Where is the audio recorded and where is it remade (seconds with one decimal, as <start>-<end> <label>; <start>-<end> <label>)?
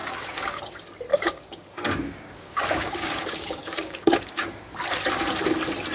0.0-0.6 remade; 0.6-1.1 recorded; 1.1-4.6 remade; 4.6-5.9 recorded